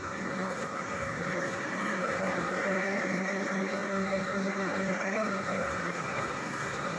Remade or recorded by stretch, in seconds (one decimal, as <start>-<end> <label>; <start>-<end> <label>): 0.0-7.0 remade